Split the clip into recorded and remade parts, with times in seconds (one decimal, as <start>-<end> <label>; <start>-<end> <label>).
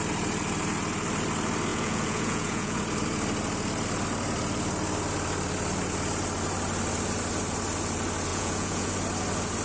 0.0-1.7 recorded; 1.7-2.8 remade; 2.8-8.3 recorded; 8.3-8.9 remade; 8.9-9.6 recorded